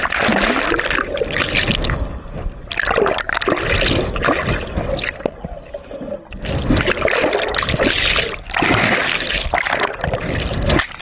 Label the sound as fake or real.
real